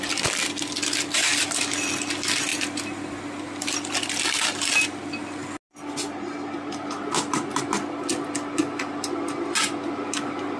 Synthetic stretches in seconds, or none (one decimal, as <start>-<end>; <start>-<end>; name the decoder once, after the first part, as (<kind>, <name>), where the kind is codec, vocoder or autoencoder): none